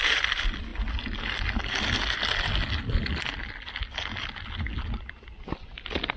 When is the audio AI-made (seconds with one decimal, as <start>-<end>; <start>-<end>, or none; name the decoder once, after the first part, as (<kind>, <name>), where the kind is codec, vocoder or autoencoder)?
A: none